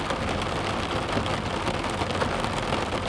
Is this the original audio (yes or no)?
yes